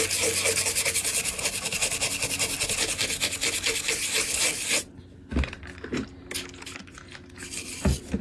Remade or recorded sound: recorded